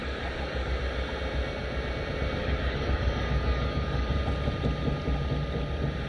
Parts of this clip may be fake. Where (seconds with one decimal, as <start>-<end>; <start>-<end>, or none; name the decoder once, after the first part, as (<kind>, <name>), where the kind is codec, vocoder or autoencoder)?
0.0-0.8 (codec, DAC); 2.4-4.1